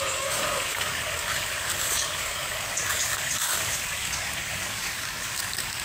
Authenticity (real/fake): fake